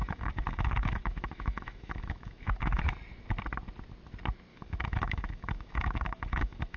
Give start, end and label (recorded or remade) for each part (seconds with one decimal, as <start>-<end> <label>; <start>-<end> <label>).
0.0-2.8 remade; 2.8-4.5 recorded; 4.5-6.8 remade